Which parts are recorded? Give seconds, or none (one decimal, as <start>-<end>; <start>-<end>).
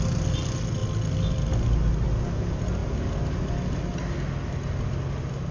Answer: 0.0-5.5